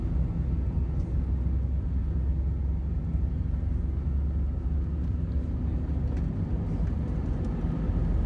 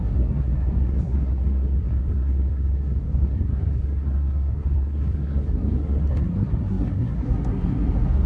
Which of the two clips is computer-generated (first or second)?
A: second